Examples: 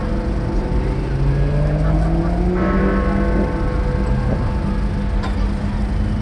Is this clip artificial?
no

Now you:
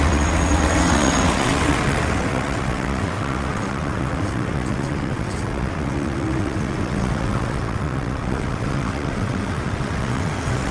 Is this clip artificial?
yes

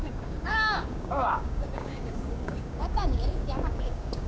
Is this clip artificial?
yes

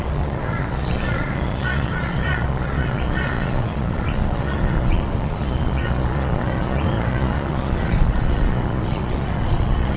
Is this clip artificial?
yes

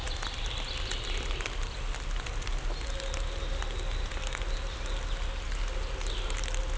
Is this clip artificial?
no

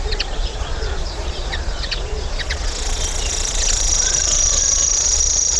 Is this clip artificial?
yes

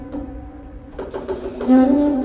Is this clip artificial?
yes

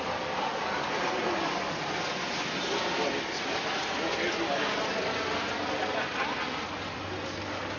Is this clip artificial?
no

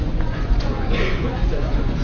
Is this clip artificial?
yes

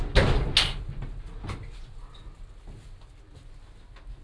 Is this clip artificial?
no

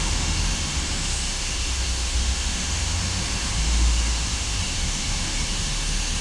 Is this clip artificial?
yes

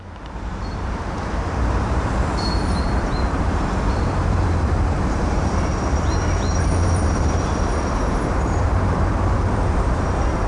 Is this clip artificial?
yes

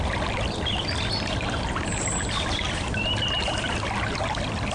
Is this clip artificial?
no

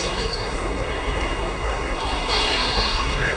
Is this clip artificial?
yes